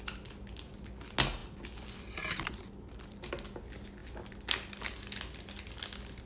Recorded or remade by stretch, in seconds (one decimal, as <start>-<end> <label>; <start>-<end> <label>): 0.0-1.4 recorded; 1.4-3.3 remade; 3.3-6.3 recorded